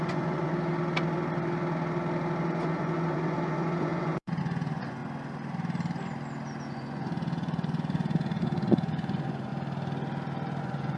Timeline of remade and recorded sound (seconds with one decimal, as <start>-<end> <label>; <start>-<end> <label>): 0.0-0.5 remade; 0.5-2.4 recorded; 2.4-5.0 remade; 5.0-6.7 recorded; 6.7-9.5 remade; 9.5-10.6 recorded; 10.6-11.0 remade